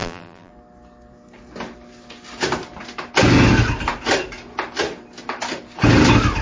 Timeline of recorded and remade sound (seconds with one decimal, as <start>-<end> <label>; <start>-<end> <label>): 0.0-0.5 remade; 0.5-6.4 recorded